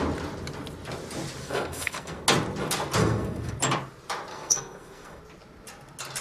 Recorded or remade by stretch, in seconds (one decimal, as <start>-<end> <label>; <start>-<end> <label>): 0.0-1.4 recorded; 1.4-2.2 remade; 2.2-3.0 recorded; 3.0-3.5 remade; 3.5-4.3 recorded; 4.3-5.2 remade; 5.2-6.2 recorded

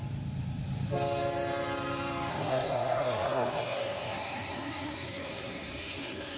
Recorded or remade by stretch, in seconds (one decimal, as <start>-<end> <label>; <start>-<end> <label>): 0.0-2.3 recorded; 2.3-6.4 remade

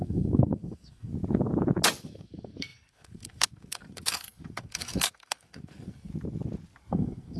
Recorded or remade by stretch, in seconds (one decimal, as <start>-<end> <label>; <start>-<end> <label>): 0.0-1.1 remade; 1.1-2.0 recorded; 2.0-6.1 remade; 6.1-6.9 recorded; 6.9-7.4 remade